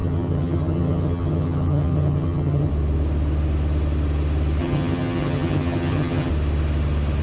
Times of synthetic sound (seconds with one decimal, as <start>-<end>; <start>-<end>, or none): 0.0-2.7; 4.6-6.3